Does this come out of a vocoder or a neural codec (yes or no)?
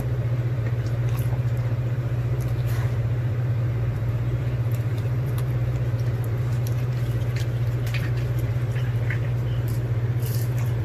yes